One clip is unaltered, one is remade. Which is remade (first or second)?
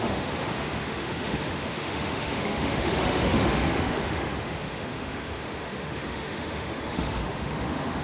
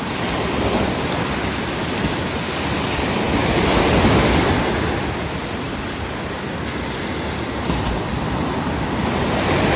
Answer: first